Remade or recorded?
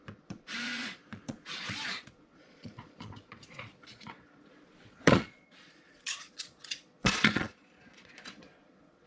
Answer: remade